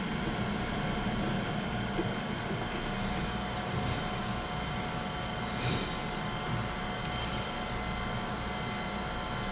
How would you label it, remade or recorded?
recorded